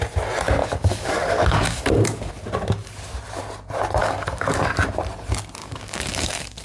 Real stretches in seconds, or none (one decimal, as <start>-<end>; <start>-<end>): 0.0-0.6; 2.3-4.0; 4.6-5.6